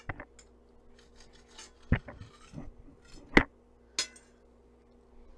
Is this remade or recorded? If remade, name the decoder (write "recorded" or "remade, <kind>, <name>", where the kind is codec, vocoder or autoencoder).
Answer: recorded